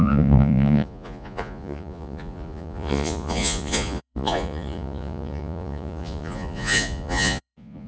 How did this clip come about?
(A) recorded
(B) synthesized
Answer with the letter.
B